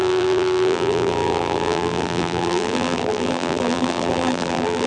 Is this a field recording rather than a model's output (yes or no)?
no